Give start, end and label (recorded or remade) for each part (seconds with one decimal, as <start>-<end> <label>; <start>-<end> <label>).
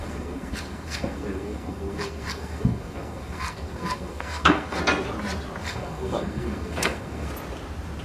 0.0-4.8 remade; 4.8-5.6 recorded; 5.6-7.3 remade; 7.3-8.0 recorded